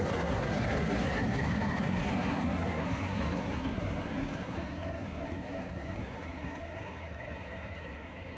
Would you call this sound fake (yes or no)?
yes